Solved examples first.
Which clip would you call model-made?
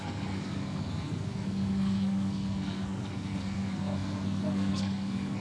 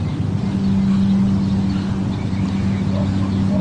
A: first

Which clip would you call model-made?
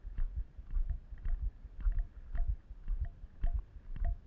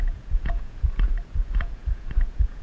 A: second